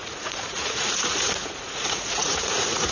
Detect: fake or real fake